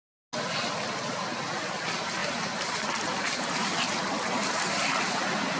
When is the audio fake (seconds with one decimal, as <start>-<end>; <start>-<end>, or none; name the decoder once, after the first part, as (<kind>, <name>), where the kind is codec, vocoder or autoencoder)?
none